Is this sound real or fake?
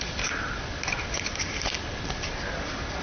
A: real